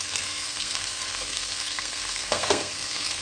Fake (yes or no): yes